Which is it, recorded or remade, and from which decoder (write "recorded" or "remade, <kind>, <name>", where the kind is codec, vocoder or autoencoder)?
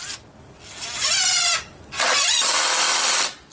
recorded